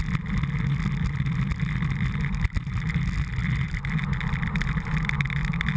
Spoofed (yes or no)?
no